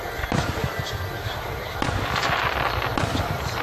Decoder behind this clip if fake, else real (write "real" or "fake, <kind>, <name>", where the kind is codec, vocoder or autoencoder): real